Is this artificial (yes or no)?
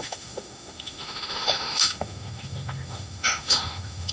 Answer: yes